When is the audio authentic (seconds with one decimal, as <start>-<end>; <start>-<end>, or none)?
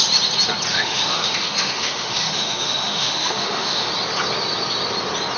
0.0-0.7; 3.9-5.4